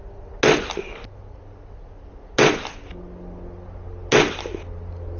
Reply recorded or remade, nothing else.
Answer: recorded